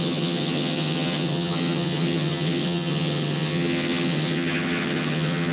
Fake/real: fake